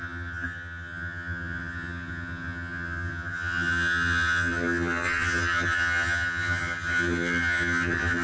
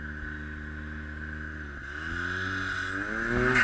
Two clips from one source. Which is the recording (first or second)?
second